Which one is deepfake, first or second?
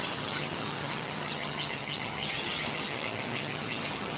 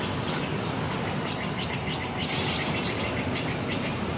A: first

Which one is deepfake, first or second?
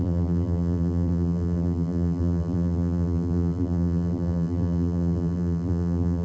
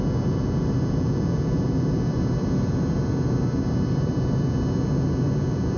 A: first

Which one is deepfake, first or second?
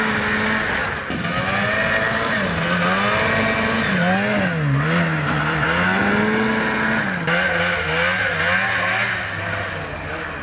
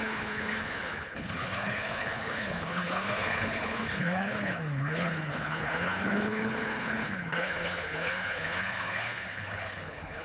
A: second